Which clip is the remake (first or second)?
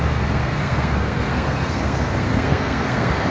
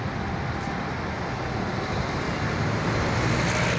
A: first